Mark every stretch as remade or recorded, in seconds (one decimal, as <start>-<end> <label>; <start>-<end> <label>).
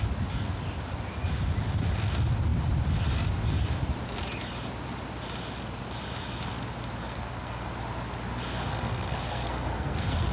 0.0-7.0 recorded; 7.0-7.7 remade; 7.7-8.7 recorded; 8.7-10.3 remade